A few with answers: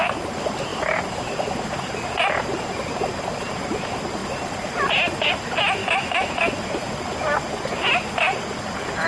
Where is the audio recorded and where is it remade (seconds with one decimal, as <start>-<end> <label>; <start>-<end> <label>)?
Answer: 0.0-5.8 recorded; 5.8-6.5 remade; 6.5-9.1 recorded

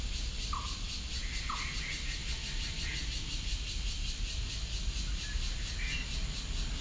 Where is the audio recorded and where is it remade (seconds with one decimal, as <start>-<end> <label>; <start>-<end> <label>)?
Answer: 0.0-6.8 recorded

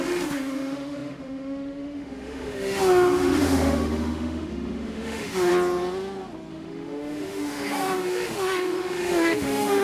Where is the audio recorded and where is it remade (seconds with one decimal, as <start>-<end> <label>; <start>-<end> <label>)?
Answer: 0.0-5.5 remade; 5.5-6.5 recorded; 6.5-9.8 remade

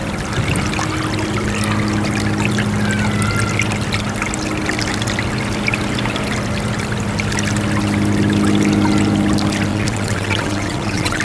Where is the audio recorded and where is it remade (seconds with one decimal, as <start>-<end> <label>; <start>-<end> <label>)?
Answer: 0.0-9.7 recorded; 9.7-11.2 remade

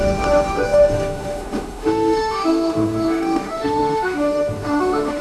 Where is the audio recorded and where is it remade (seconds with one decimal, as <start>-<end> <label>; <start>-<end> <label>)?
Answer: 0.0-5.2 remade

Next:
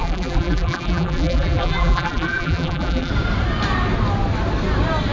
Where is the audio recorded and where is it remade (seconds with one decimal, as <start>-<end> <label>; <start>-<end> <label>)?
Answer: 0.0-3.1 remade; 3.1-5.1 recorded